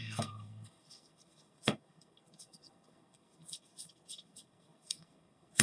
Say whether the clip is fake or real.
fake